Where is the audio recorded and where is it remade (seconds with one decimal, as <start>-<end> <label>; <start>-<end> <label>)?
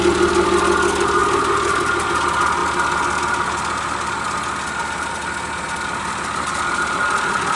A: 0.0-7.6 recorded